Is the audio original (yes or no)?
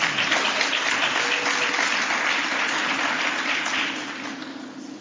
yes